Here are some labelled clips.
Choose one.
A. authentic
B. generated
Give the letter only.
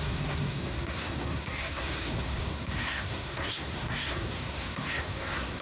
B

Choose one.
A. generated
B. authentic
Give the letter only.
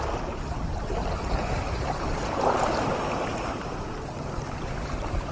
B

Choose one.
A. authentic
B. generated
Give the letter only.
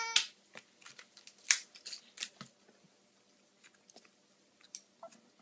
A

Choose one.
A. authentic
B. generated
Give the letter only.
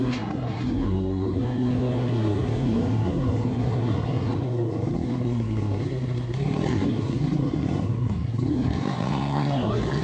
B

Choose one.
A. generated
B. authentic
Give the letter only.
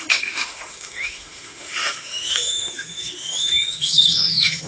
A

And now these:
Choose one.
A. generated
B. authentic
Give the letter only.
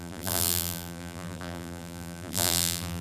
A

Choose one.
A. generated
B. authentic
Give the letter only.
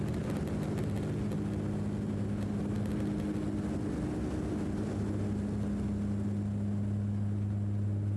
B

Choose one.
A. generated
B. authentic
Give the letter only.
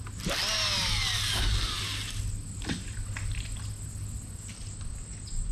B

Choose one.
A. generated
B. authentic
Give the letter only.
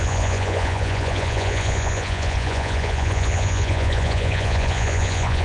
A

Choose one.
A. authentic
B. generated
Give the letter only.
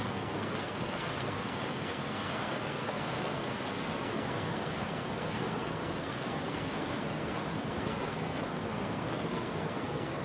B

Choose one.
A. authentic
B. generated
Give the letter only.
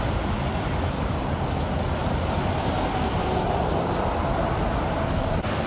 A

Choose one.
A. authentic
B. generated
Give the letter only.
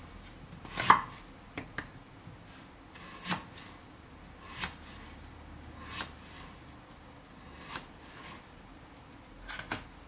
A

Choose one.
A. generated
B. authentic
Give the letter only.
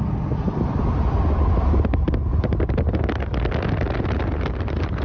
B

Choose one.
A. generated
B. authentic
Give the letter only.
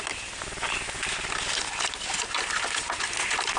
B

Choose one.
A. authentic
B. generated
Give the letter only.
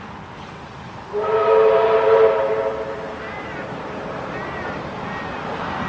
A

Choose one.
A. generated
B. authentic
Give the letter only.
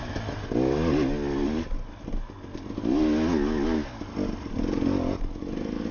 B